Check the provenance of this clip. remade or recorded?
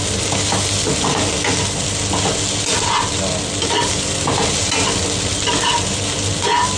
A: recorded